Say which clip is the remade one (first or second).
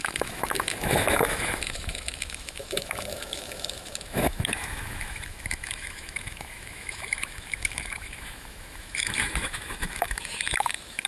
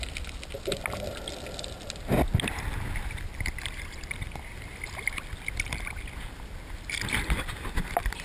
first